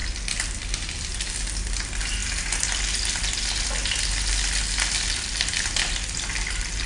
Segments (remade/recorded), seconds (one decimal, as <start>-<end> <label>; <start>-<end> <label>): 0.0-6.9 recorded